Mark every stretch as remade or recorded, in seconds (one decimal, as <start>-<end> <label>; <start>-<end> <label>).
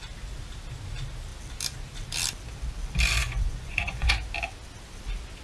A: 0.0-3.2 recorded; 3.2-4.1 remade; 4.1-5.4 recorded